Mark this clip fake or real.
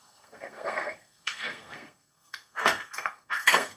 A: fake